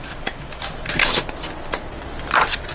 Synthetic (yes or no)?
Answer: no